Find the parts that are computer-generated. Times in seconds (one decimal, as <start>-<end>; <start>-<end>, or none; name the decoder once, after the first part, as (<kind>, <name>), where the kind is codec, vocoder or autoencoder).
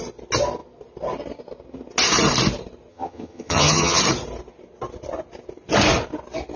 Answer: 2.9-4.0 (vocoder, HiFi-GAN)